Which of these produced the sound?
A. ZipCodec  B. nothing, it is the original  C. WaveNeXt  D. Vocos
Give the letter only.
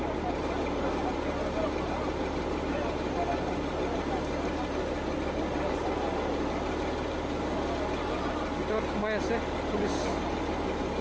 B